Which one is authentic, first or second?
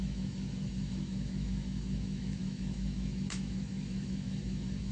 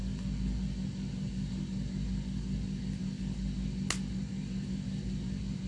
second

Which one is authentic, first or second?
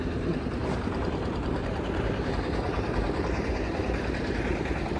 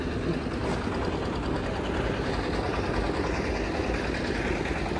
second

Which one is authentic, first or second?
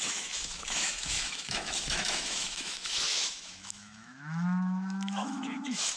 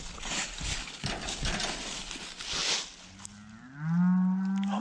second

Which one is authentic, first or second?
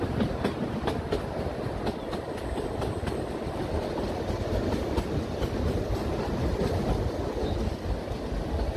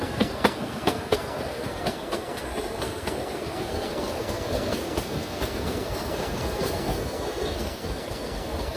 first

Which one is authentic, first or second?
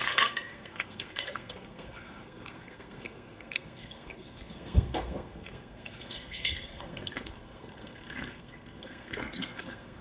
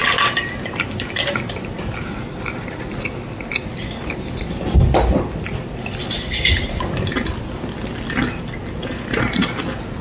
second